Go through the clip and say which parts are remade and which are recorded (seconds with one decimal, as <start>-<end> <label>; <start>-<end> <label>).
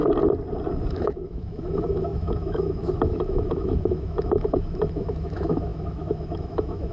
0.0-0.9 recorded; 0.9-6.9 remade